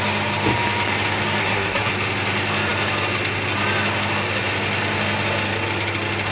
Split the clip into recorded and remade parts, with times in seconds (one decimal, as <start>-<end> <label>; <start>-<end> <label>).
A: 0.0-1.4 recorded; 1.4-1.9 remade; 1.9-6.3 recorded